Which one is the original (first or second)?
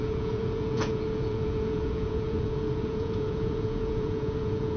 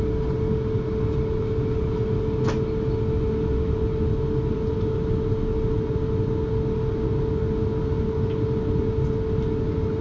second